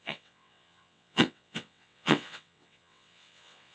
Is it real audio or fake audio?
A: fake